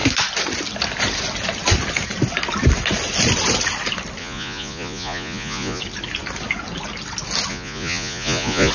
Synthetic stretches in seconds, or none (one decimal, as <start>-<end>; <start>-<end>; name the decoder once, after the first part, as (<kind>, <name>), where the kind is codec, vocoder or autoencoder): 4.2-5.8 (vocoder, Vocos); 7.5-8.7